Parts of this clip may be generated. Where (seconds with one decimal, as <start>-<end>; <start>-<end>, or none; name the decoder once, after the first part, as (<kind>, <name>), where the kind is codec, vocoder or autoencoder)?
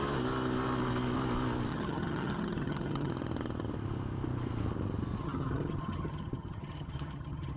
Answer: 1.7-3.1 (vocoder, HiFi-GAN); 5.2-7.6